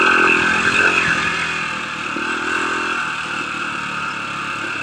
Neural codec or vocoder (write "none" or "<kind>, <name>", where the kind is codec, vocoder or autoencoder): none